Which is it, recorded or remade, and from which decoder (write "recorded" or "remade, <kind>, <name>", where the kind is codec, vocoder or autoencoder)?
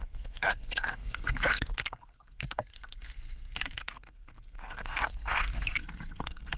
remade, codec, SNAC